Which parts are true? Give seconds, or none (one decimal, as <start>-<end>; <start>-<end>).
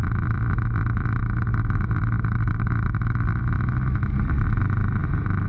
0.0-1.2; 3.4-5.5